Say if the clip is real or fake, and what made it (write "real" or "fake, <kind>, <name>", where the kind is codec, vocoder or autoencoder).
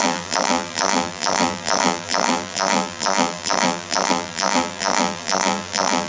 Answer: fake, vocoder, BigVGAN v2